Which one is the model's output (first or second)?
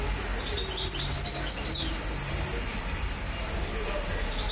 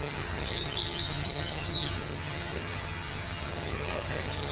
second